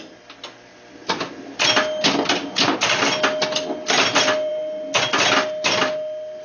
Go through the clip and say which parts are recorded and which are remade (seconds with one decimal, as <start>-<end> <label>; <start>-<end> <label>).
0.0-6.4 recorded